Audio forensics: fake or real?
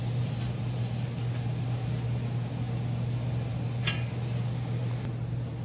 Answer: real